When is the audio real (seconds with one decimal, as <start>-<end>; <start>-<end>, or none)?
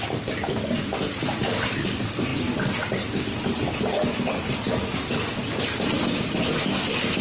0.0-7.2